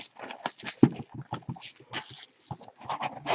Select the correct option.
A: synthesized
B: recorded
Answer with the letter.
B